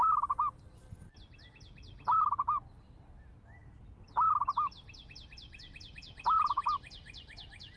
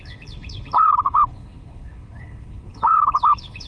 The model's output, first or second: second